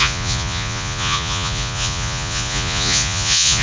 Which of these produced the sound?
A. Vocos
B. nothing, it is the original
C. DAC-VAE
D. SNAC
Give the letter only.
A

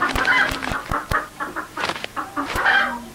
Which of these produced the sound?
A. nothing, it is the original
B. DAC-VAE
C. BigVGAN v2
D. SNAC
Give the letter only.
C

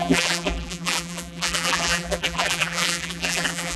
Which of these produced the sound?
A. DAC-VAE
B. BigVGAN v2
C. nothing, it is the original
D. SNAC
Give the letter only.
B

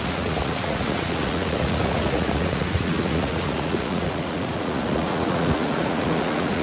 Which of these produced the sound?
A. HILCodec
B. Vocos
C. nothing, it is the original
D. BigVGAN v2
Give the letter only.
B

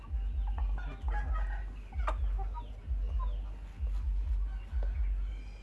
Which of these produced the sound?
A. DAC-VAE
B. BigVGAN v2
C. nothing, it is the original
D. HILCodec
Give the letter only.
C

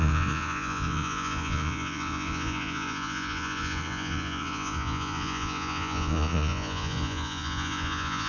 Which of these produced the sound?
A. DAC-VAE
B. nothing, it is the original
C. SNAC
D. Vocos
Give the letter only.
D